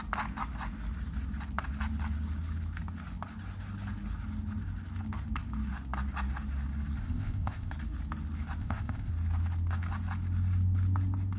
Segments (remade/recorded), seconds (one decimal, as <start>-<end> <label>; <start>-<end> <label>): 0.0-7.0 recorded; 7.0-7.7 remade; 7.7-8.6 recorded; 8.6-9.1 remade; 9.1-11.4 recorded